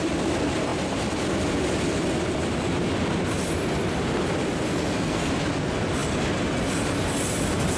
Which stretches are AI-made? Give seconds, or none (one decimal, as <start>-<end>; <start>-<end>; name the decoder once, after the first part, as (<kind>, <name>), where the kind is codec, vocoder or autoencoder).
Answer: 4.7-5.3 (codec, SNAC)